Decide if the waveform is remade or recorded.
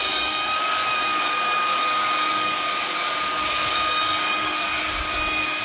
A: remade